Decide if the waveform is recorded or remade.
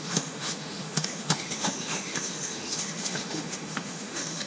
remade